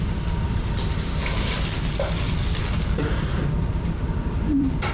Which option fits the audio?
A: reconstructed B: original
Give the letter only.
A